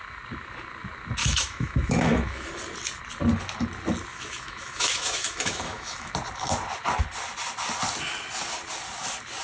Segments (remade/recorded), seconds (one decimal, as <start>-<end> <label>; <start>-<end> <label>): 0.0-1.2 recorded; 1.2-2.5 remade; 2.5-4.1 recorded; 4.1-6.1 remade; 6.1-9.4 recorded